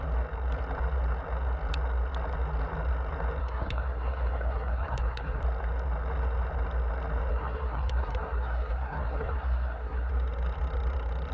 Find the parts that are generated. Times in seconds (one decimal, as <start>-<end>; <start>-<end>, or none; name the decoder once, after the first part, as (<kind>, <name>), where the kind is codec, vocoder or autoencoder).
3.4-5.4 (codec, SNAC); 7.3-10.1

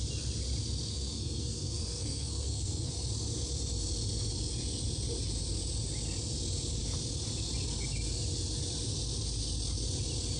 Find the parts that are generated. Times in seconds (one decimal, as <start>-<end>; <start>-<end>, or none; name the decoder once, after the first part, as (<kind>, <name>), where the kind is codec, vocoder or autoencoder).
0.9-2.9 (codec, SNAC)

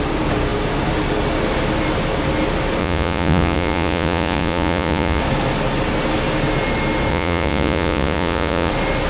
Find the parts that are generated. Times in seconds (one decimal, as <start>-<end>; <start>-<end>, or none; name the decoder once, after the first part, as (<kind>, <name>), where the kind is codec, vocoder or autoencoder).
2.8-5.2 (vocoder, Vocos); 7.1-8.7

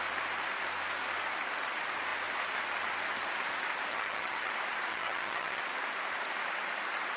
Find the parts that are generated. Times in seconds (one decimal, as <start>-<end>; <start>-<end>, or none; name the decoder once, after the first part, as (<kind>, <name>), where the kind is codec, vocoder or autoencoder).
3.9-4.5 (vocoder, HiFi-GAN); 4.9-5.6

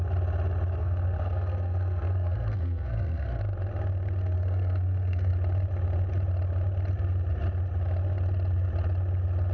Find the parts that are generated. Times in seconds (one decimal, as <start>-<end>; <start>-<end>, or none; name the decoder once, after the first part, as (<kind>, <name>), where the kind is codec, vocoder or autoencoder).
0.8-3.4 (codec, SNAC); 4.2-5.3

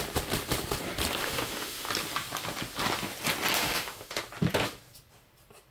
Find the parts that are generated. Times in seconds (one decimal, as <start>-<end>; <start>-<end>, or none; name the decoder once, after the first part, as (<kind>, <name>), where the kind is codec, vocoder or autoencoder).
1.2-1.9 (autoencoder, DAC-VAE); 3.6-4.2